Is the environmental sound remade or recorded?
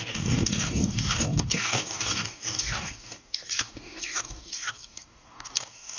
remade